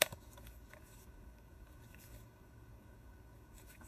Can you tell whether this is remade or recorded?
remade